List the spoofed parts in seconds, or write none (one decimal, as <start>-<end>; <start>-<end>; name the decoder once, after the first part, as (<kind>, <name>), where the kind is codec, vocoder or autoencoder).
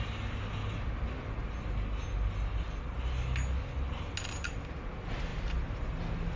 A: none